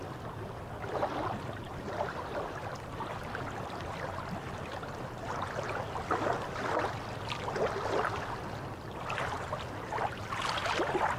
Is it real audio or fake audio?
real